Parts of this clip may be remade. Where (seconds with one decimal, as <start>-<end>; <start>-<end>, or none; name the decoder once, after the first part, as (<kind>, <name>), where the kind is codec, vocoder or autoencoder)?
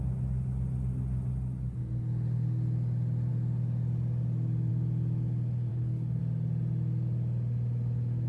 5.7-6.2 (codec, HILCodec)